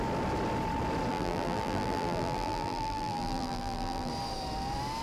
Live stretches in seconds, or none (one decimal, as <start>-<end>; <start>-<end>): 0.0-1.1; 4.1-5.0